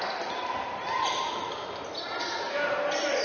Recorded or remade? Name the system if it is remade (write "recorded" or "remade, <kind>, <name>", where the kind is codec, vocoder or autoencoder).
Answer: recorded